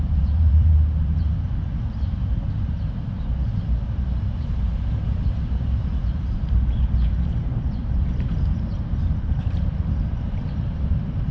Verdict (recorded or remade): remade